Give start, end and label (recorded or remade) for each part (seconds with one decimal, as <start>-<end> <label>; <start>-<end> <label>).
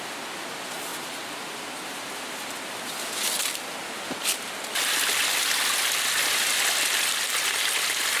0.0-8.2 recorded